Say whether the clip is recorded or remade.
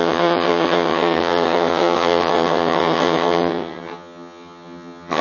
remade